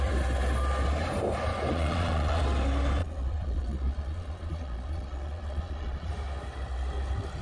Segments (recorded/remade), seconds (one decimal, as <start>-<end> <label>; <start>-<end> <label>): 0.0-1.7 recorded; 1.7-2.4 remade; 2.4-3.0 recorded; 3.0-6.1 remade; 6.1-7.4 recorded